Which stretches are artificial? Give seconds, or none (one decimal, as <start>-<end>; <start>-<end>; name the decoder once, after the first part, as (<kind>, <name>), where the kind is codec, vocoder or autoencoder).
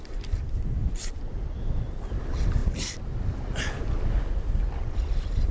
none